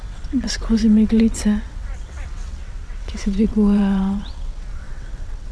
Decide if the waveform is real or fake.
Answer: fake